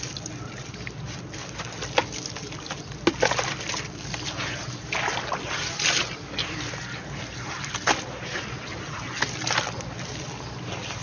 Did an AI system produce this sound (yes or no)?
no